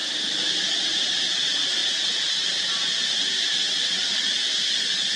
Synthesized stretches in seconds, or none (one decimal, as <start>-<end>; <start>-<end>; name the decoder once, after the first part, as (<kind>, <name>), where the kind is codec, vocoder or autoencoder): none